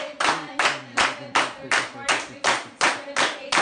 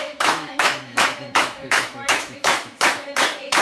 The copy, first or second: second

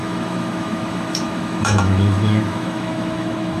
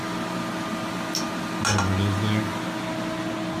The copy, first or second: first